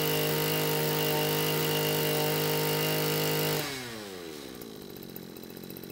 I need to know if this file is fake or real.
real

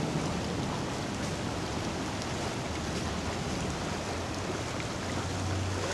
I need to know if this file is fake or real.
real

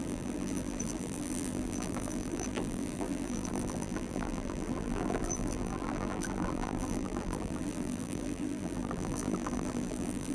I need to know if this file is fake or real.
fake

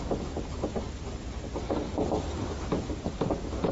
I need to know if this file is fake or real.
real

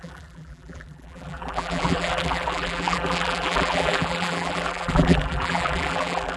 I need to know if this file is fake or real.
fake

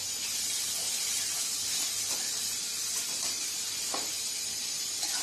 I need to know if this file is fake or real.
fake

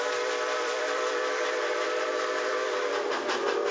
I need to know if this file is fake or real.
fake